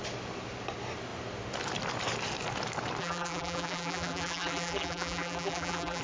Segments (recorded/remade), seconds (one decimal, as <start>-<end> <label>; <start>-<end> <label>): 0.0-3.0 recorded; 3.0-6.0 remade